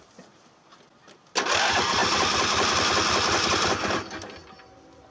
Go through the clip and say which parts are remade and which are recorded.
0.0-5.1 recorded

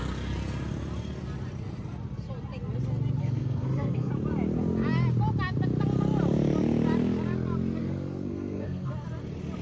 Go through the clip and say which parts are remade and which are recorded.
0.0-3.2 recorded; 3.2-4.1 remade; 4.1-7.8 recorded; 7.8-8.9 remade; 8.9-9.6 recorded

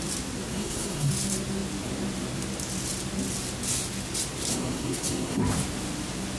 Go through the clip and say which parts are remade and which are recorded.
0.0-0.5 recorded; 0.5-1.1 remade; 1.1-4.5 recorded; 4.5-5.4 remade; 5.4-6.4 recorded

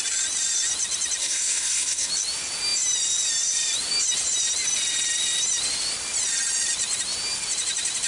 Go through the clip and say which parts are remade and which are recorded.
0.0-1.2 recorded; 1.2-2.1 remade; 2.1-8.1 recorded

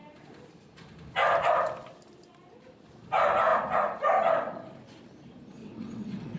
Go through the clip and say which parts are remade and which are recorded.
0.0-5.6 recorded; 5.6-6.4 remade

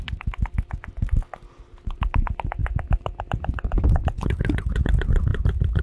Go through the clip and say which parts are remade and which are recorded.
0.0-2.6 recorded; 2.6-3.2 remade; 3.2-5.3 recorded; 5.3-5.8 remade

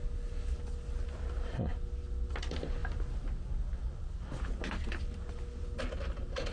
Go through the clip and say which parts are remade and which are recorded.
0.0-6.5 recorded